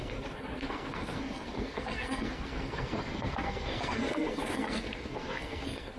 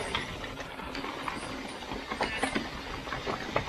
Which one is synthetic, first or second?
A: first